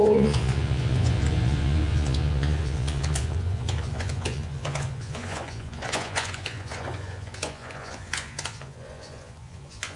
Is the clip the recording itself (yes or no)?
no